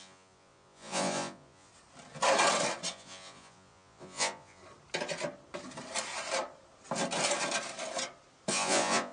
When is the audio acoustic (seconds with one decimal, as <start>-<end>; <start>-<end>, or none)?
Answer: 1.7-2.9; 4.6-8.5